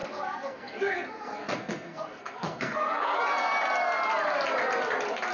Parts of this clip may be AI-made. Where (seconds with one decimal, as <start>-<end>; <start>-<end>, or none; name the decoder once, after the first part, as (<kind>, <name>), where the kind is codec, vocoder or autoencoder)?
0.0-3.2 (codec, SNAC)